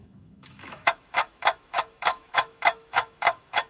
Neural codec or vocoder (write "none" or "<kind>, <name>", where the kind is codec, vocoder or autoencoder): autoencoder, DAC-VAE